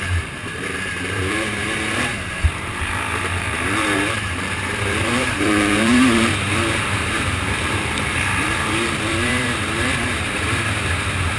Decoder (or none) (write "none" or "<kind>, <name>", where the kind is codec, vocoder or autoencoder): vocoder, BigVGAN v2